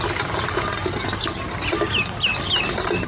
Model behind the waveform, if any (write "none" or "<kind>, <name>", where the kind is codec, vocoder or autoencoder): none